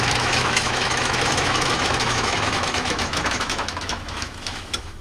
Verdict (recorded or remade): remade